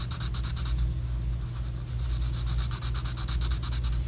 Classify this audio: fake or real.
real